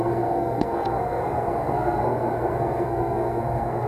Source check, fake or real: fake